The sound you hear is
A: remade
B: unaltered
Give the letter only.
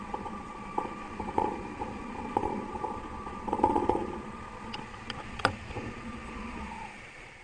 A